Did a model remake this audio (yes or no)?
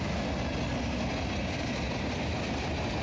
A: no